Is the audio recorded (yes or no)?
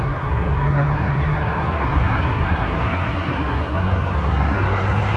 no